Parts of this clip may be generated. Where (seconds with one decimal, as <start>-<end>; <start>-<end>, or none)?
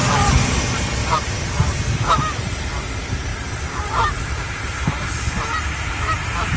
0.0-0.6; 1.0-2.6; 3.3-5.3